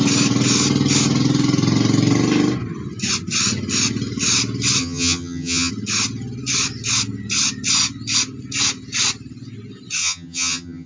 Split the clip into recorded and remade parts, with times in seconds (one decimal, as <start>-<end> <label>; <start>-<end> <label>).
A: 0.0-4.8 recorded; 4.8-5.7 remade; 5.7-10.0 recorded; 10.0-10.9 remade